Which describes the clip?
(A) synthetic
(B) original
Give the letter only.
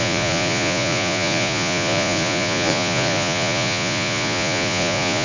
A